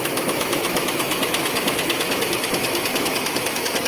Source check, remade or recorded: remade